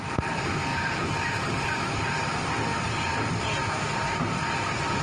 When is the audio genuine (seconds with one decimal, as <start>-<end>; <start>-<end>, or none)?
0.0-0.7; 1.5-5.0

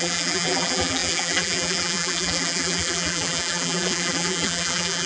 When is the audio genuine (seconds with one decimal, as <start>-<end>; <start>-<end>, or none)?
none

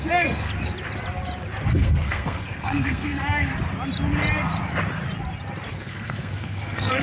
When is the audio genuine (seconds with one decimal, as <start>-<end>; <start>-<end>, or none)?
0.5-1.7; 3.5-5.7

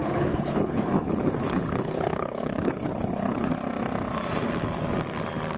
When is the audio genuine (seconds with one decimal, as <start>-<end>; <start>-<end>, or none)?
3.5-5.6

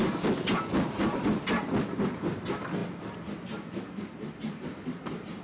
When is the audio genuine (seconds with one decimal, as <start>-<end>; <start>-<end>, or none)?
0.0-5.4

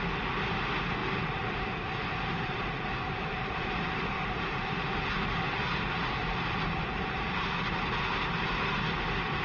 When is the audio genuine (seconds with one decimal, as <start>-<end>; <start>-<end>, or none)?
0.0-1.0; 5.1-6.2; 7.5-9.4